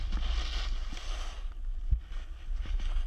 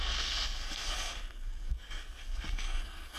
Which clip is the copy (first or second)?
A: second